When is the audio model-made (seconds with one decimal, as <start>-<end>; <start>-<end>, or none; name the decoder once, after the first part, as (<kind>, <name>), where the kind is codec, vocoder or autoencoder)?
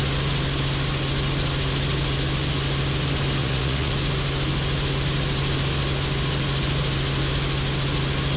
3.4-3.9 (vocoder, Vocos)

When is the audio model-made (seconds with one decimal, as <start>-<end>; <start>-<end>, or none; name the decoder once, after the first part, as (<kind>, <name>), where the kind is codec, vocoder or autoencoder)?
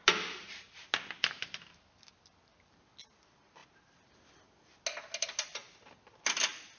none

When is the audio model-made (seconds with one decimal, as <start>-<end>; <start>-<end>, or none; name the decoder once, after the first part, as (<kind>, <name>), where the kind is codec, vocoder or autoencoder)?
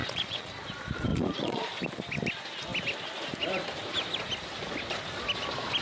0.0-0.5 (vocoder, Vocos); 1.1-1.8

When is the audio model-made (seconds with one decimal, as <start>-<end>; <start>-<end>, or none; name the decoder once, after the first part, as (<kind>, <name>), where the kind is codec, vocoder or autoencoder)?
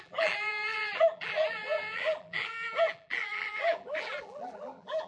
0.0-5.1 (vocoder, BigVGAN v2)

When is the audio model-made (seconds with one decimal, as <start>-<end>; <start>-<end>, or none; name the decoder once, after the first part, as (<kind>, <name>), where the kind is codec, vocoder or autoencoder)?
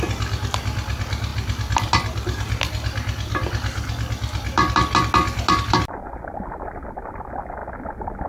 none